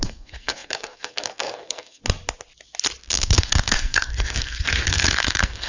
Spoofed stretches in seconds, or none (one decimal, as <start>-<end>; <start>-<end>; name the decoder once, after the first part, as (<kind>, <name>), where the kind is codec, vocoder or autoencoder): 0.0-2.0 (codec, SNAC); 3.0-5.7